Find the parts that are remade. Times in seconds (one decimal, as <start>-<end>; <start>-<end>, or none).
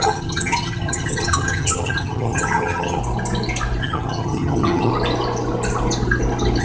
0.0-3.0; 3.8-4.9